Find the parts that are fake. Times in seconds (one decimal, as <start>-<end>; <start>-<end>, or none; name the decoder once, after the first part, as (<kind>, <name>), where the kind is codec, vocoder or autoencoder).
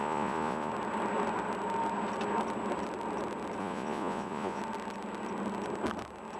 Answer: 0.0-0.7 (vocoder, Vocos); 3.6-4.6